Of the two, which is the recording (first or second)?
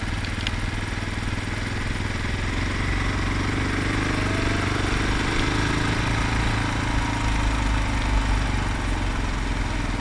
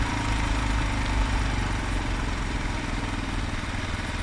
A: first